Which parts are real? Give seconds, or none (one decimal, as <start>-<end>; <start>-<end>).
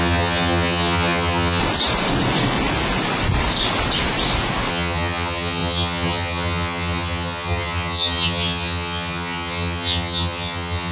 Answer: 1.6-4.7